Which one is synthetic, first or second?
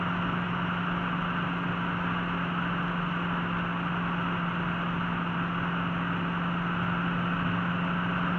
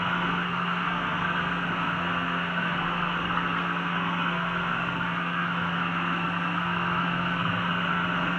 second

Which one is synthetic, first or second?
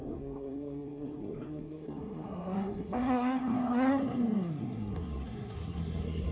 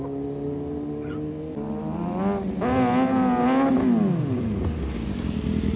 first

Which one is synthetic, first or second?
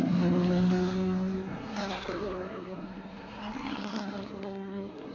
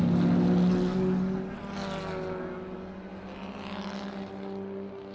first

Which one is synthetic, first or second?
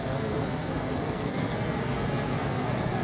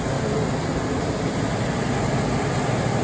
first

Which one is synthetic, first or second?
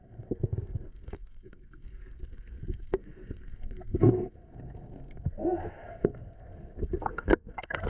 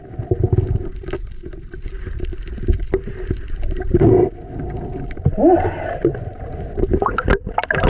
first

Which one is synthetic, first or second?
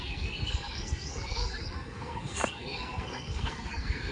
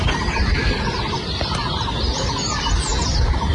first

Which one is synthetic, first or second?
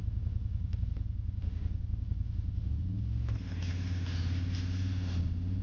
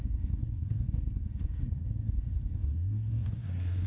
second